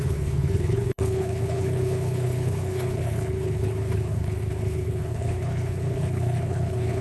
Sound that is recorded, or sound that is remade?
remade